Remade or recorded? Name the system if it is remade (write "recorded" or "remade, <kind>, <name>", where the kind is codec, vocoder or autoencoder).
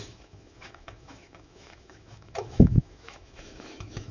remade, autoencoder, DAC-VAE